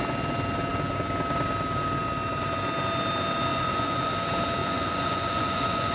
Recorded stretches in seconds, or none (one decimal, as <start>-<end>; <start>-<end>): 0.0-3.5; 4.1-4.6